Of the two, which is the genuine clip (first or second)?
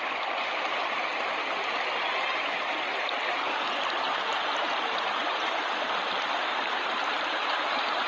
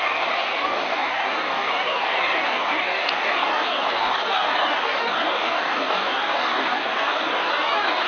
first